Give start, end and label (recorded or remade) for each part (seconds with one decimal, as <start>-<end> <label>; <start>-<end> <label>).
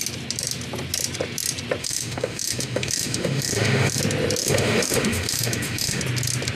0.0-1.8 recorded; 1.8-4.0 remade; 4.0-4.4 recorded; 4.4-6.0 remade; 6.0-6.6 recorded